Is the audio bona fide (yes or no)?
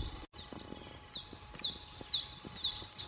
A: yes